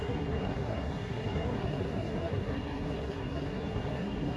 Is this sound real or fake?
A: fake